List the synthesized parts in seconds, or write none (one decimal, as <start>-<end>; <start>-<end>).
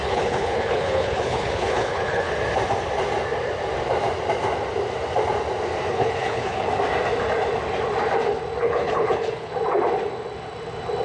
0.0-2.3; 5.9-6.7; 8.6-9.5